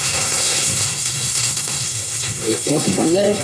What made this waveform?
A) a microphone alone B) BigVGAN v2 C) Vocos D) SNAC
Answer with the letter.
D